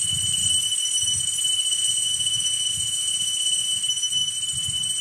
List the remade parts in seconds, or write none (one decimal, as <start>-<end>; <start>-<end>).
1.7-3.8